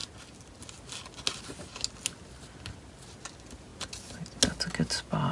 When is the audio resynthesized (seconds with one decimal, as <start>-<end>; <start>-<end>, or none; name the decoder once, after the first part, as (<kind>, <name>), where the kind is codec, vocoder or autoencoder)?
none